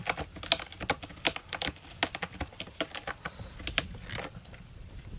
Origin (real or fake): real